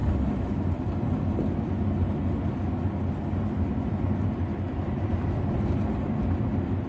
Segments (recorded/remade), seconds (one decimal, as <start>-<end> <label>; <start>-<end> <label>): 0.0-3.4 recorded; 3.4-6.2 remade; 6.2-6.9 recorded

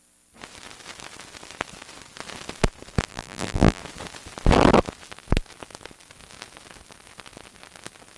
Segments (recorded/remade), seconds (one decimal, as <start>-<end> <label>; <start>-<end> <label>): 0.0-3.1 recorded; 3.1-3.8 remade; 3.8-8.2 recorded

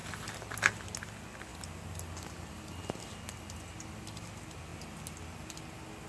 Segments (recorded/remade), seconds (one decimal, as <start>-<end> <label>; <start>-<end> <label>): 0.0-6.1 recorded

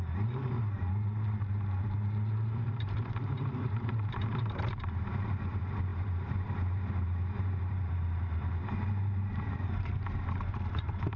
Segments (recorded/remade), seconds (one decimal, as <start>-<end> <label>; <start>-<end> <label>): 0.0-11.2 remade

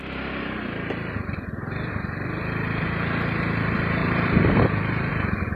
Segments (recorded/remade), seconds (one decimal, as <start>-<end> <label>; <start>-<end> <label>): 0.0-4.0 recorded; 4.0-5.1 remade; 5.1-5.6 recorded

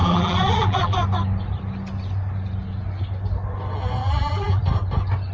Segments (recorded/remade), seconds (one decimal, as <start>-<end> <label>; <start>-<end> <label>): 0.0-1.0 remade; 1.0-4.0 recorded; 4.0-4.6 remade; 4.6-5.3 recorded